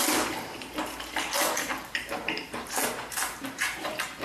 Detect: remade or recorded remade